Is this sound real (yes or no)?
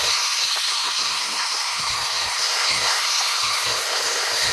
no